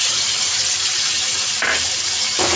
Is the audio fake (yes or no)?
no